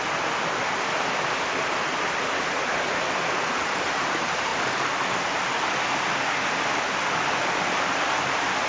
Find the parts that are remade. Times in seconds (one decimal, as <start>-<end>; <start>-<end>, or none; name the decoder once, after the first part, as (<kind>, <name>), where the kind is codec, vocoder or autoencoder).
none